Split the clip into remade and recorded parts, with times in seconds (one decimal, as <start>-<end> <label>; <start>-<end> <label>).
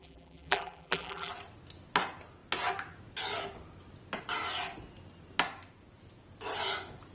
0.0-1.3 remade; 1.3-7.1 recorded